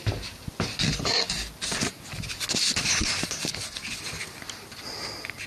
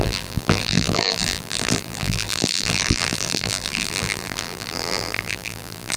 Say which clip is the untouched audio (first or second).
first